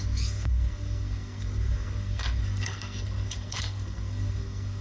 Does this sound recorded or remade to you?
remade